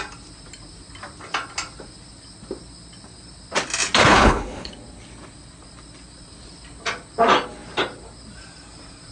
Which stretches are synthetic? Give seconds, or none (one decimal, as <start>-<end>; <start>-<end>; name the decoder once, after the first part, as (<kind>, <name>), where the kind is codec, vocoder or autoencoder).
4.0-4.7 (codec, HILCodec)